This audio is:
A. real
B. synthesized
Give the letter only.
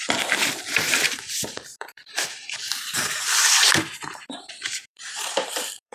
B